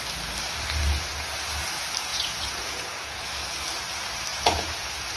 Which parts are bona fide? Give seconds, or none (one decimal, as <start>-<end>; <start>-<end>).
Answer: 0.0-2.1; 3.2-4.3; 4.8-5.2